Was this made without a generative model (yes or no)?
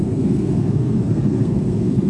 no